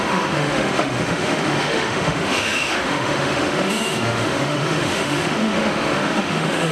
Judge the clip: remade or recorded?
remade